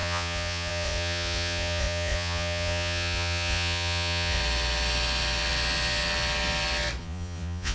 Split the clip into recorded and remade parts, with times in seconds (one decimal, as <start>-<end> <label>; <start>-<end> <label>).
0.0-4.4 remade; 4.4-7.0 recorded; 7.0-7.7 remade